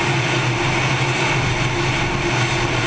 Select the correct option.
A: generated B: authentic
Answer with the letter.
B